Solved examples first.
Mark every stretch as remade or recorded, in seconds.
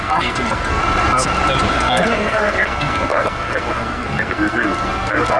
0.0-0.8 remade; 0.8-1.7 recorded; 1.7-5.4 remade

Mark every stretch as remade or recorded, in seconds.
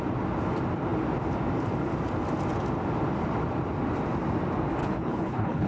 0.0-4.8 recorded; 4.8-5.7 remade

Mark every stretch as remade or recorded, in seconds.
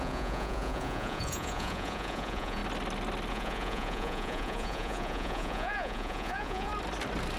0.0-2.6 remade; 2.6-3.3 recorded; 3.3-6.7 remade; 6.7-7.4 recorded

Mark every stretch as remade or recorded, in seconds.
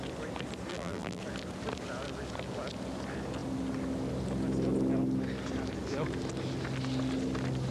0.0-0.7 recorded; 0.7-1.2 remade; 1.2-7.7 recorded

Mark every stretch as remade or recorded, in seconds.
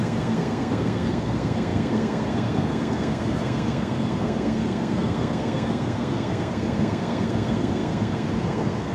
0.0-8.9 remade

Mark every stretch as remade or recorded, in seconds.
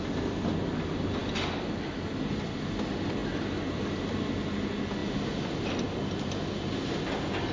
0.0-7.5 recorded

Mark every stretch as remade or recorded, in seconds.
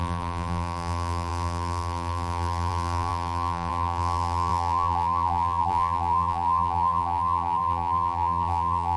0.0-9.0 remade